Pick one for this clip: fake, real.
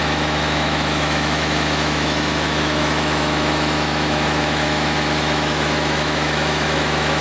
fake